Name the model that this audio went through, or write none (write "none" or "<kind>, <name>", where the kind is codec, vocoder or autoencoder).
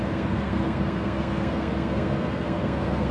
codec, SNAC